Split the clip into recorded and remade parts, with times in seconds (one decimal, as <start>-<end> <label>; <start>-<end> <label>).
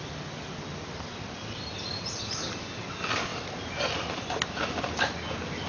0.0-3.3 recorded; 3.3-3.8 remade; 3.8-5.7 recorded